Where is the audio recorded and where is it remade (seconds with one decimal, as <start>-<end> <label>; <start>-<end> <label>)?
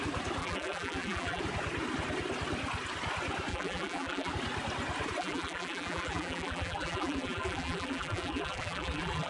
0.0-0.4 recorded; 0.4-1.4 remade; 1.4-3.5 recorded; 3.5-4.3 remade; 4.3-5.2 recorded; 5.2-9.3 remade